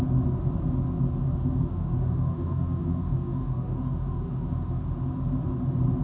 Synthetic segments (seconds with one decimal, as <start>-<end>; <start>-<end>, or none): 1.2-4.8